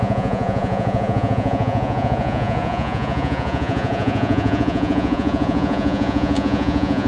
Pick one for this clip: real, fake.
fake